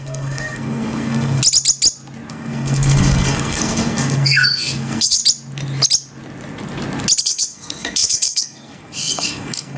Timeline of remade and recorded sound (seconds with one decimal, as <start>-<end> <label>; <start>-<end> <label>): 0.0-1.4 remade; 1.4-2.3 recorded; 2.3-5.2 remade; 5.2-7.2 recorded; 7.2-9.8 remade